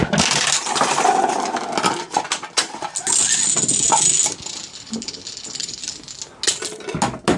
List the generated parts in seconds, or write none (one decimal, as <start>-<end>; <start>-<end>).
4.7-5.8